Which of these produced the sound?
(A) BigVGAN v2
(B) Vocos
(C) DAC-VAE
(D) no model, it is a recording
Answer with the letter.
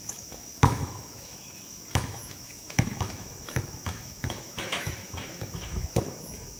C